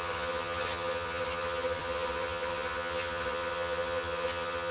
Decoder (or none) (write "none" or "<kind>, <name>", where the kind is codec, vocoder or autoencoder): vocoder, HiFi-GAN